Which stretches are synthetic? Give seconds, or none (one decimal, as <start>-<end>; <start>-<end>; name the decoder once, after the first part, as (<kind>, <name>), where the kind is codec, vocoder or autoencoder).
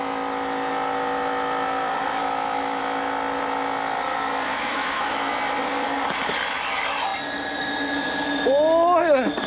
2.2-2.8 (autoencoder, DAC-VAE); 4.5-5.3